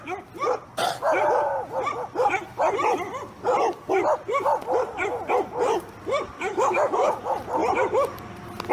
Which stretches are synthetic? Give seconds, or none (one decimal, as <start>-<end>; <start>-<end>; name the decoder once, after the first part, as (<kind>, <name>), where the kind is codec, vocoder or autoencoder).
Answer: 6.5-7.1 (codec, DAC)